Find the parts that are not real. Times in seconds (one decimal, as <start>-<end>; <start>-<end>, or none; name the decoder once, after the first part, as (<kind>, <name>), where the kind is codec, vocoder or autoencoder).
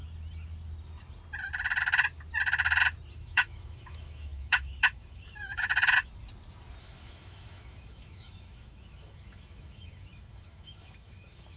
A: 3.1-6.1 (autoencoder, DAC-VAE); 6.8-11.6